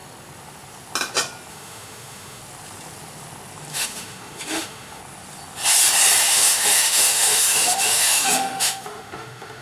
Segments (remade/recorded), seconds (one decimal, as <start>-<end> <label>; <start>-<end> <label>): 0.0-1.5 recorded; 1.5-2.4 remade; 2.4-3.7 recorded; 3.7-5.0 remade; 5.0-6.2 recorded; 6.2-9.6 remade